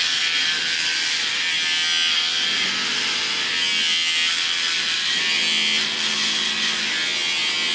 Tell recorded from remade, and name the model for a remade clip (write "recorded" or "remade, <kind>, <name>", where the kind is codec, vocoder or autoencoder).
recorded